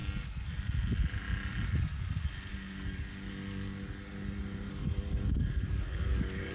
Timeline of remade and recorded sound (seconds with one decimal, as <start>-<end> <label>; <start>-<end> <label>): 0.0-2.5 recorded; 2.5-3.1 remade; 3.1-4.7 recorded; 4.7-6.5 remade